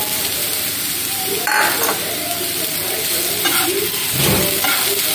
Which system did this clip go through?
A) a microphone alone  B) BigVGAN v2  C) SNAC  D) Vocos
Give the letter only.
A